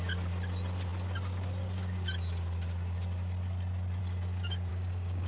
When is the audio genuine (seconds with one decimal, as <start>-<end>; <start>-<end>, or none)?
0.0-4.7